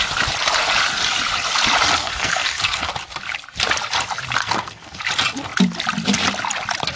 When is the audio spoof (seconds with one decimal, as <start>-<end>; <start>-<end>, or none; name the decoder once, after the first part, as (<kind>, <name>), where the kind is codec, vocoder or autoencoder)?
2.0-2.9 (codec, SNAC); 4.4-5.0